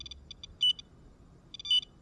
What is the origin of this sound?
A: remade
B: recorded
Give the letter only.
B